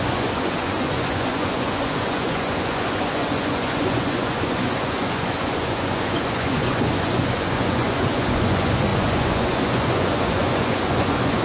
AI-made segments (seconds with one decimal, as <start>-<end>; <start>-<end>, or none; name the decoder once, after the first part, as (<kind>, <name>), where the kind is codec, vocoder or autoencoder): 0.0-11.4 (vocoder, Vocos)